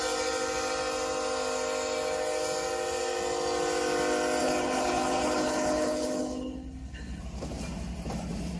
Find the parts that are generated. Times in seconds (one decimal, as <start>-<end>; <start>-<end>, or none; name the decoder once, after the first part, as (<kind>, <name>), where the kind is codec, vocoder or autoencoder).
4.4-7.2 (codec, HILCodec)